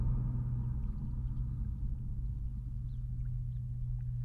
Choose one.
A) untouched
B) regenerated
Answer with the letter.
A